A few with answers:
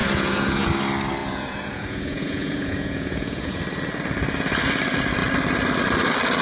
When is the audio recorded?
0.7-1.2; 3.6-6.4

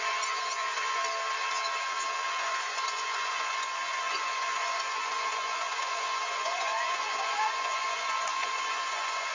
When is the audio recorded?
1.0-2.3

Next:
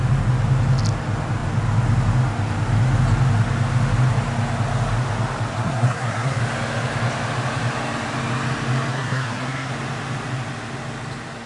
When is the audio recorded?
0.0-5.5; 6.4-8.9; 9.7-11.5